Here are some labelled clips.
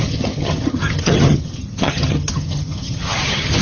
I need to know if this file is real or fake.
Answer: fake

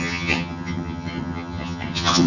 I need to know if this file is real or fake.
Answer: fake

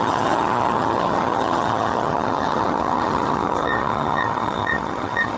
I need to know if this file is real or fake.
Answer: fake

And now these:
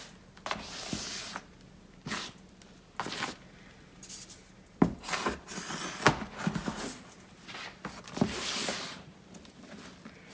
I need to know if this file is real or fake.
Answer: real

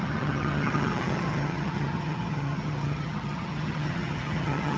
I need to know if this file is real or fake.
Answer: fake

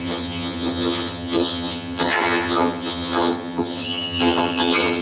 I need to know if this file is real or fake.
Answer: fake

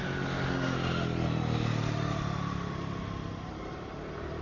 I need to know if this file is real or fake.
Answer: real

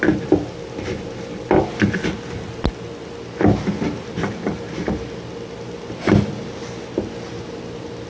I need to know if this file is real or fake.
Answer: real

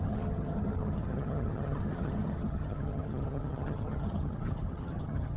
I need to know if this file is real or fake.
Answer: fake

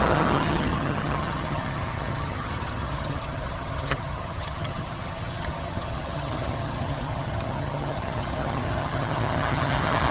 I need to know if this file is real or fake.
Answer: fake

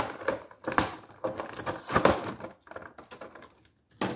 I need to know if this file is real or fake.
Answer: real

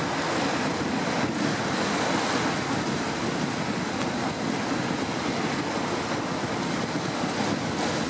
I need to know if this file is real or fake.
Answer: real